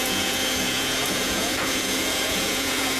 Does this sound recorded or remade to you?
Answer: remade